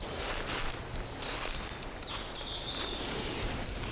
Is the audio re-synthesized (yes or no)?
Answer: no